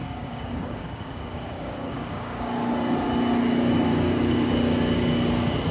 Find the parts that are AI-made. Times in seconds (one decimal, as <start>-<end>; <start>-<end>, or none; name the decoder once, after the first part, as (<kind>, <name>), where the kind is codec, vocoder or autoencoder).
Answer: 0.0-2.7 (codec, DAC); 3.9-4.5